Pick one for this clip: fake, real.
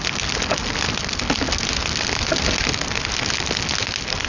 real